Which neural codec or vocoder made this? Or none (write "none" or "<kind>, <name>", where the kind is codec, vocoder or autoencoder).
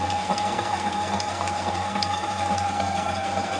codec, SNAC